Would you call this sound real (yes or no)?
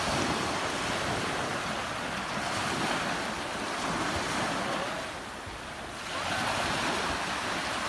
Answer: yes